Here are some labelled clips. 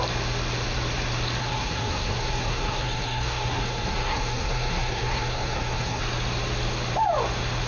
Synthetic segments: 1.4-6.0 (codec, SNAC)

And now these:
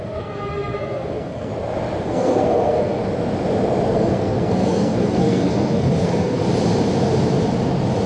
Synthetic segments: 0.0-1.5 (codec, SNAC); 2.0-3.0; 3.9-6.4

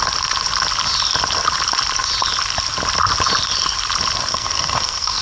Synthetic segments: 4.3-5.2 (codec, SNAC)